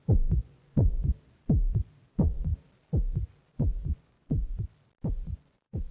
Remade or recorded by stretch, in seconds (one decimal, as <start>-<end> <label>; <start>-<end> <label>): 0.0-1.0 remade; 1.0-2.1 recorded; 2.1-2.5 remade; 2.5-3.5 recorded; 3.5-4.5 remade; 4.5-5.1 recorded; 5.1-5.9 remade